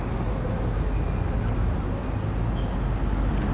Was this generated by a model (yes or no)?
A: no